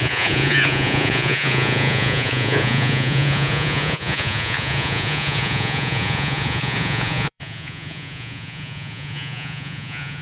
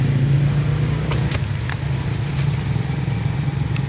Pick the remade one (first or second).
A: first